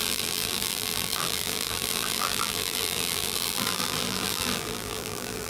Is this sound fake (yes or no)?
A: yes